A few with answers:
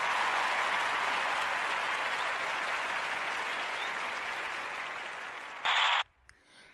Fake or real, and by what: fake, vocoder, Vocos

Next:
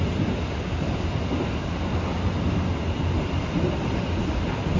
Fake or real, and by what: real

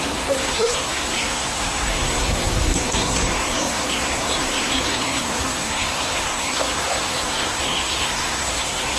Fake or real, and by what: fake, codec, SNAC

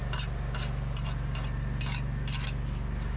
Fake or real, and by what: real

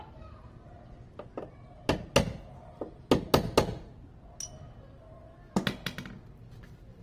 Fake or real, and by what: real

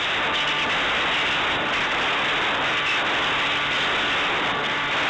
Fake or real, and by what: real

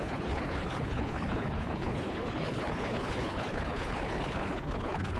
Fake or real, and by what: fake, codec, HILCodec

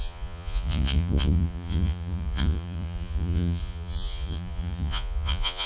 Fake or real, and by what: fake, vocoder, Vocos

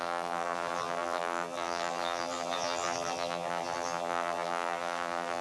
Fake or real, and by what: fake, vocoder, BigVGAN v2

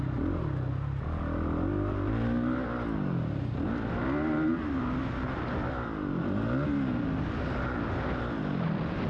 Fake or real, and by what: real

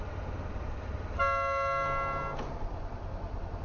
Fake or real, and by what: real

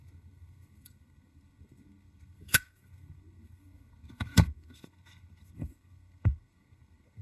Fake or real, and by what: fake, codec, SNAC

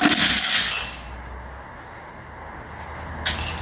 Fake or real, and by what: real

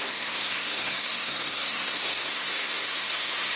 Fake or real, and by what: fake, codec, SNAC